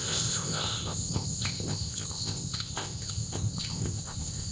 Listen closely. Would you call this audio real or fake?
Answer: fake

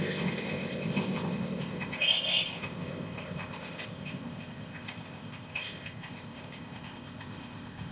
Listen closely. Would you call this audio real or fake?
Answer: fake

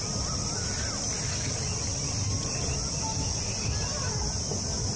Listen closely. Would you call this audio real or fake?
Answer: real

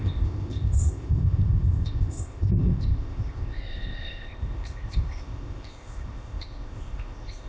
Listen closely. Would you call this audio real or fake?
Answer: fake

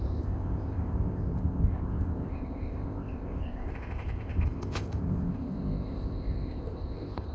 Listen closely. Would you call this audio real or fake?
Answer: fake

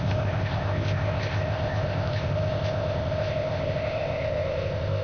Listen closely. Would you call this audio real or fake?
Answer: fake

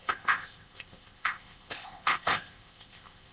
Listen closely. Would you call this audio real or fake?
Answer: fake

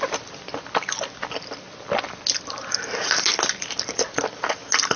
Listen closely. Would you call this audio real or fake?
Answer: real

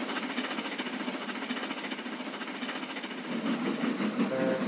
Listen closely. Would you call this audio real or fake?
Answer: real